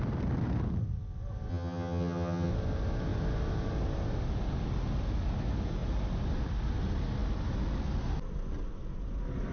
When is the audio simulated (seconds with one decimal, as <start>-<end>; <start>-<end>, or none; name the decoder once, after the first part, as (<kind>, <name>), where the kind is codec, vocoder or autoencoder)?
1.5-2.5 (vocoder, HiFi-GAN)